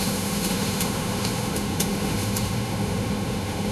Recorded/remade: remade